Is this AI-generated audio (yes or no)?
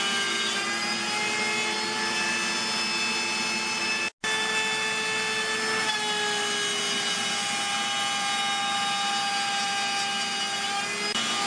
no